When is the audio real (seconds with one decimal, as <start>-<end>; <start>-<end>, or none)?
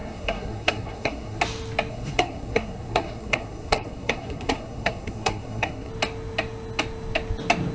1.4-1.9; 5.9-7.7